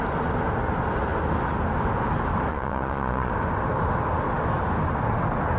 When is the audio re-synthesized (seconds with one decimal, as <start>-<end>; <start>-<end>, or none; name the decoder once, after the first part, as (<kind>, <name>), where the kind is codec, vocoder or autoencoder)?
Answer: 2.5-3.3 (vocoder, Vocos)